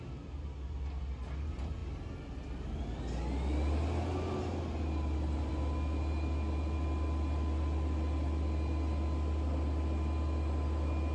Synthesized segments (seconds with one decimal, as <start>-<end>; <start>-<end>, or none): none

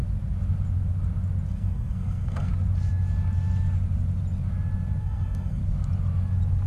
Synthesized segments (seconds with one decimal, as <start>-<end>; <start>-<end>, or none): 1.5-2.5; 5.0-5.6

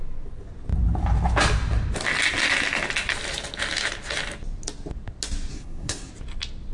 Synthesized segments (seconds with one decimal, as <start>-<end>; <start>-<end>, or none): 5.5-6.1

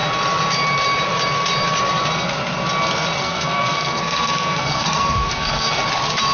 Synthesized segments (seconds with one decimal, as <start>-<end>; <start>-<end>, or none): 3.2-5.7

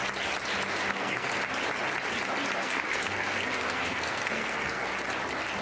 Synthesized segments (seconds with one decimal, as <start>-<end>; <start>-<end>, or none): 0.9-1.4; 2.6-4.9

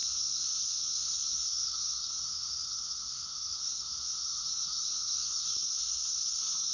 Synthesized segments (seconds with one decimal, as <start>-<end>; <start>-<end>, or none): 0.0-6.7

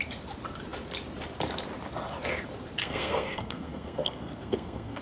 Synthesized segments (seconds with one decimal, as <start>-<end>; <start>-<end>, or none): 2.8-5.0